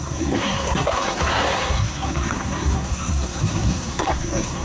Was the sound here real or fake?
fake